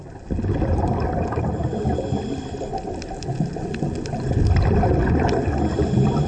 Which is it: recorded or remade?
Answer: recorded